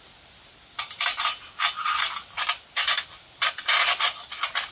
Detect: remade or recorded recorded